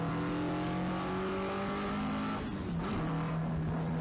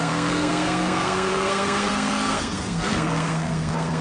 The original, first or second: first